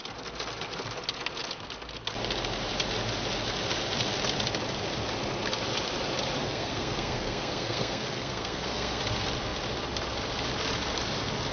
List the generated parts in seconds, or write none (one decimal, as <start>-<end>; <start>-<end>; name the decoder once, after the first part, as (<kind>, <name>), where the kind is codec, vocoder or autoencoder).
6.4-9.0 (codec, SNAC)